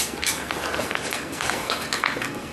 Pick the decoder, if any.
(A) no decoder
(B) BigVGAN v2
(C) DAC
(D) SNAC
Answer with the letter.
D